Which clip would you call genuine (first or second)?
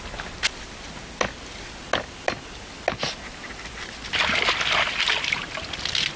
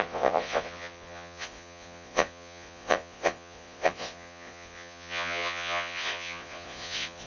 first